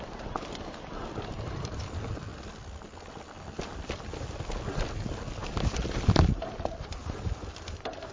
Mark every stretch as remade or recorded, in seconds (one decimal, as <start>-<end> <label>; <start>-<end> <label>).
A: 0.0-8.1 recorded